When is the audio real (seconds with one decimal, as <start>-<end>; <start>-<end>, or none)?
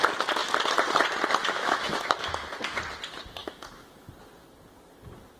0.0-1.4; 2.8-3.4; 4.1-5.4